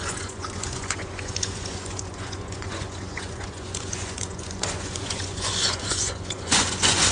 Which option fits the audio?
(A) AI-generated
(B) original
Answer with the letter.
A